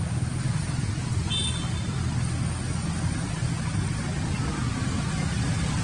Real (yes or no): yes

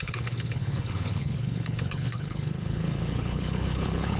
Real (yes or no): no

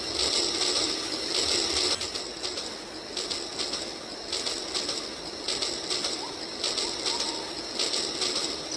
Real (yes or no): yes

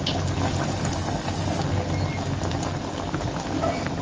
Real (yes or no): yes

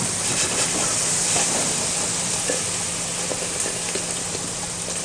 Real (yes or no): yes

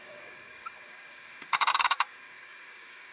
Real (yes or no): no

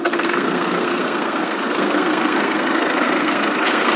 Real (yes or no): no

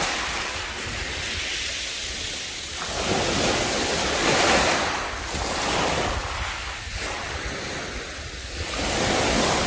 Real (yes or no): yes